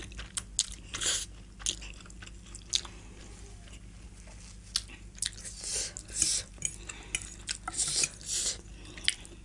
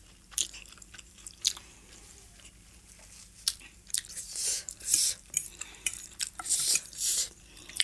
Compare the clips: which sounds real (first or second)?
first